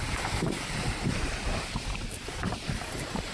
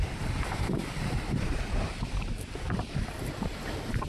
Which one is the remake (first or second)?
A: second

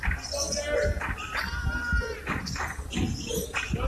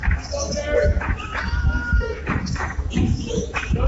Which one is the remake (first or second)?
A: second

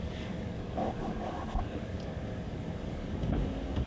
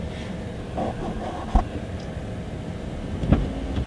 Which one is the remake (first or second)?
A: first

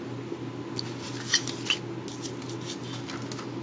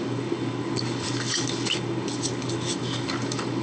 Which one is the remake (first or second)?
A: second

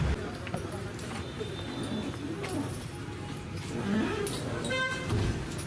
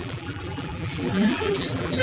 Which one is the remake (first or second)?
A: second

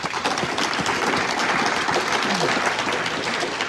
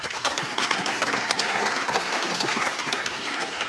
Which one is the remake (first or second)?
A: second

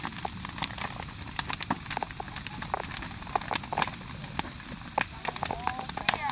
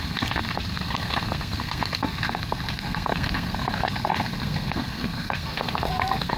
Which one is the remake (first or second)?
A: second